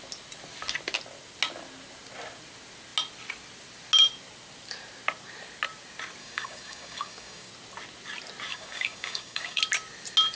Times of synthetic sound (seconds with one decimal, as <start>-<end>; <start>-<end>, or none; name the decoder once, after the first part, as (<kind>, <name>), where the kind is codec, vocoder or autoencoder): 6.2-7.5 (codec, DAC); 8.5-9.6